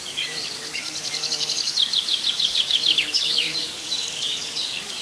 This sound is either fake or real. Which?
fake